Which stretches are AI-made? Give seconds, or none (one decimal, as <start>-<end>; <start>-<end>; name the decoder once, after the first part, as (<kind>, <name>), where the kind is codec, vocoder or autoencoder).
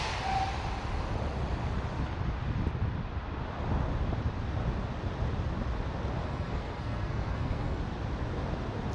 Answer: 6.2-7.8 (codec, SNAC)